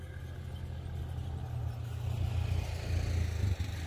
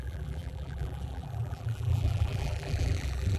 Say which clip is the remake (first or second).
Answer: second